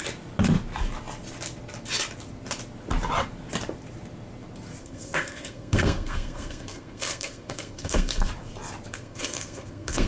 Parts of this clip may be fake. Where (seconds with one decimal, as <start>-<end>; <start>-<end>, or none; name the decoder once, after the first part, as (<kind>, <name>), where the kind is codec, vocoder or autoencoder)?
4.8-8.3 (codec, SNAC); 8.9-10.1